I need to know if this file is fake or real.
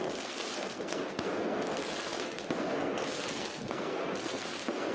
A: fake